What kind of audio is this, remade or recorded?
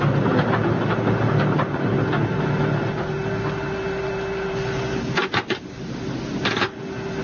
recorded